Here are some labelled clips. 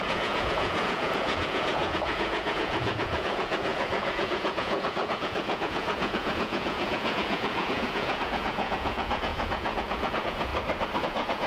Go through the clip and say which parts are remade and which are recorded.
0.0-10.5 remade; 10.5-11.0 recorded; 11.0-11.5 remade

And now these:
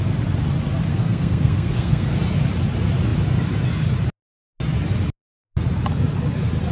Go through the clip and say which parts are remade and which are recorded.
0.0-0.9 recorded; 0.9-2.1 remade; 2.1-6.7 recorded

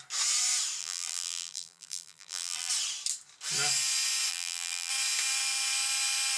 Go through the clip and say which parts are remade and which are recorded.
0.0-0.8 recorded; 0.8-2.7 remade; 2.7-4.3 recorded; 4.3-4.9 remade; 4.9-6.4 recorded

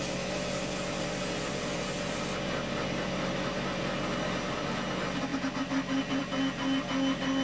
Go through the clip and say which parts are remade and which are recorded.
0.0-7.4 recorded